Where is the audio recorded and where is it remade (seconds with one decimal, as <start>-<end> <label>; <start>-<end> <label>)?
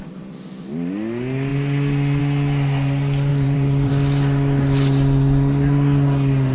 0.0-3.3 recorded; 3.3-3.9 remade; 3.9-6.5 recorded